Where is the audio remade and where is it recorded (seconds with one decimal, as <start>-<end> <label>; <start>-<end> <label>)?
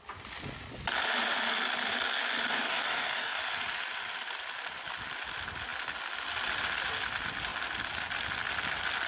0.0-2.5 recorded; 2.5-3.4 remade; 3.4-9.1 recorded